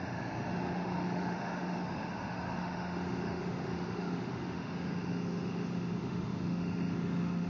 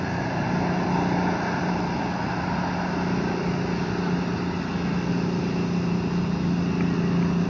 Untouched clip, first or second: second